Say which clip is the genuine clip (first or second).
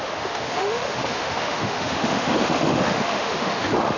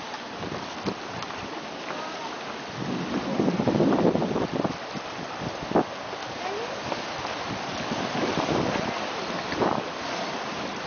second